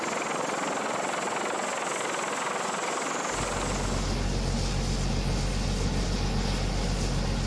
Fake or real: real